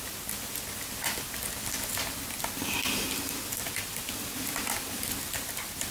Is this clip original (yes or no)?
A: yes